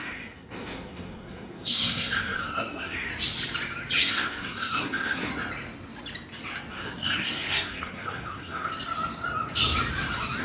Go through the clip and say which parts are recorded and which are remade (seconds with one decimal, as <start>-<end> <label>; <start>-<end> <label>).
0.0-3.1 remade; 3.1-4.0 recorded; 4.0-5.3 remade; 5.3-6.7 recorded; 6.7-8.7 remade; 8.7-10.4 recorded